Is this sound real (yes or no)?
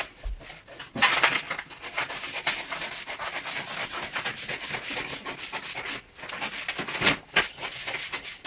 yes